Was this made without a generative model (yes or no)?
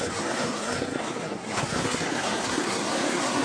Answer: no